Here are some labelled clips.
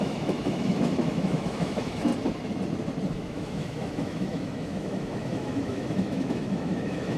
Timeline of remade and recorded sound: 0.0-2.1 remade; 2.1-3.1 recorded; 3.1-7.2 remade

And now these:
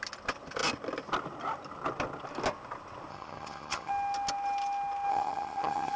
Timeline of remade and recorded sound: 0.0-3.1 recorded; 3.1-3.9 remade; 3.9-5.1 recorded; 5.1-6.0 remade